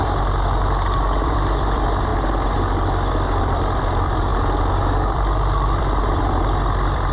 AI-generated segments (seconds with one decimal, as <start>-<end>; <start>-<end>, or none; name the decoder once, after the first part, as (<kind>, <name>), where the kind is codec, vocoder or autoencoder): 0.0-2.1 (vocoder, BigVGAN v2); 3.4-7.1